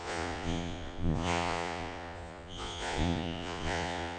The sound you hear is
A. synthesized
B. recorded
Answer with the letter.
A